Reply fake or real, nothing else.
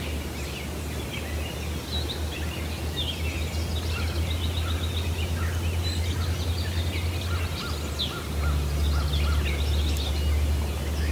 real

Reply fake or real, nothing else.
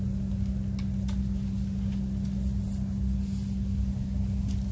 real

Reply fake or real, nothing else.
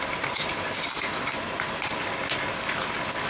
real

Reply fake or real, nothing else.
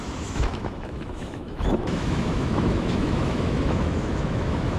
fake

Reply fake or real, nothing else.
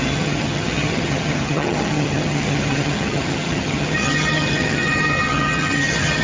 fake